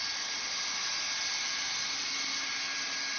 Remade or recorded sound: recorded